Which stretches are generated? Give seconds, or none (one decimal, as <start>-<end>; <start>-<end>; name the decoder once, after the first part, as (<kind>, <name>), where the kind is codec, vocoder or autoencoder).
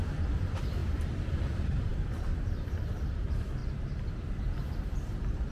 0.0-3.6 (vocoder, BigVGAN v2); 4.2-5.5